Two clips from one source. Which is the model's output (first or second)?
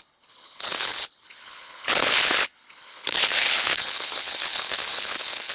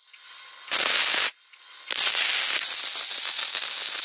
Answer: first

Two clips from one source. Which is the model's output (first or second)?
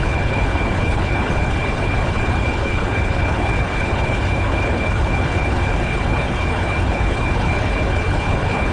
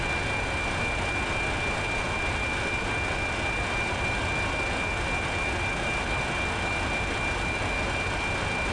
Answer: first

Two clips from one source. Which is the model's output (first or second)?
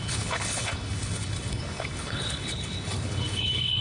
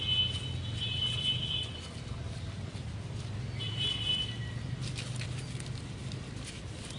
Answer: first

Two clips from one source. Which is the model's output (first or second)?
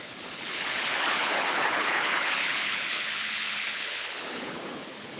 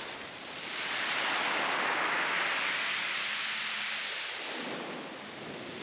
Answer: first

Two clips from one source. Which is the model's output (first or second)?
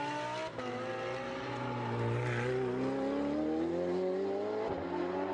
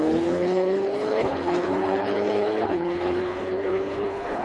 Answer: second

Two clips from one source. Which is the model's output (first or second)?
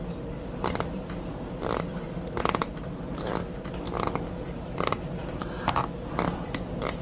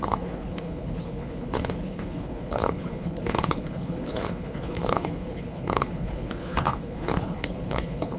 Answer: second